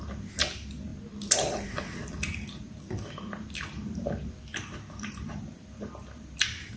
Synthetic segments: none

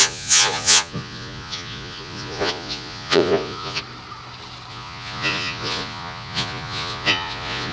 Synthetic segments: 0.0-3.8; 4.7-7.7

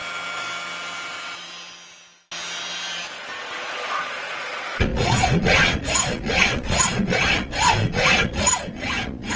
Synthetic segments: 3.7-9.4

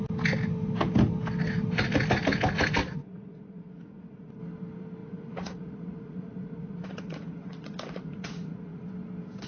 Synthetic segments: 2.8-4.4; 5.0-8.8